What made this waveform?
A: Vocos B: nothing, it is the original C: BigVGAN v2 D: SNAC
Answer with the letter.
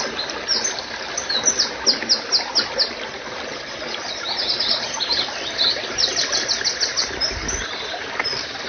B